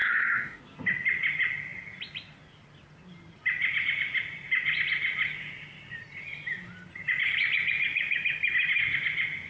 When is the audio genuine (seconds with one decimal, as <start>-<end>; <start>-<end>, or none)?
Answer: 0.6-9.5